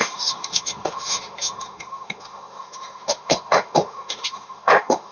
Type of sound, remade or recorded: remade